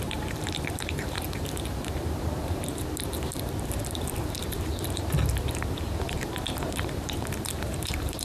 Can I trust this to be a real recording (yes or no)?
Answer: no